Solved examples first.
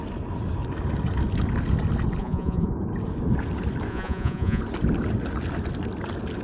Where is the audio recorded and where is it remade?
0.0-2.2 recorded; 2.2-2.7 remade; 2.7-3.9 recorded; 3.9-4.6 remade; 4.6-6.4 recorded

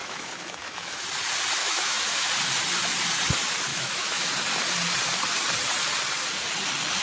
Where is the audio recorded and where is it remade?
0.0-1.0 remade; 1.0-1.6 recorded; 1.6-2.3 remade; 2.3-3.7 recorded; 3.7-4.3 remade; 4.3-7.0 recorded

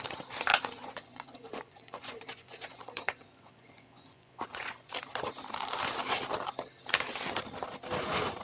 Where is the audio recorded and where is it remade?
0.0-0.5 recorded; 0.5-4.9 remade; 4.9-8.4 recorded

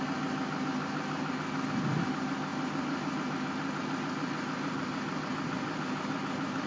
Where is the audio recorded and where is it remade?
0.0-6.7 recorded

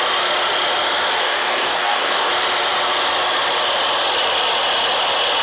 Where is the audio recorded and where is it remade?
0.0-1.2 recorded; 1.2-2.3 remade; 2.3-5.4 recorded

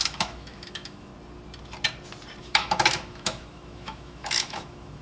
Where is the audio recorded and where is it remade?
0.0-1.1 remade; 1.1-2.4 recorded; 2.4-5.0 remade

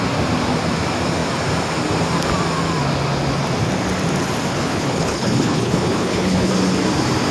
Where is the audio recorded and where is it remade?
0.0-4.5 recorded; 4.5-6.5 remade; 6.5-7.3 recorded